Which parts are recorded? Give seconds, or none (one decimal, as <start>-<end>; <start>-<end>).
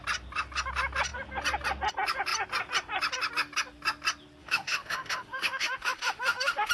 0.0-4.4